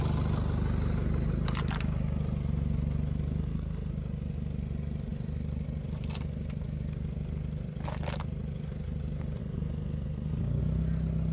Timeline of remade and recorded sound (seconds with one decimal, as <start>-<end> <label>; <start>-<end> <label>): 0.0-3.4 recorded; 3.4-3.9 remade; 3.9-9.4 recorded; 9.4-10.6 remade; 10.6-11.3 recorded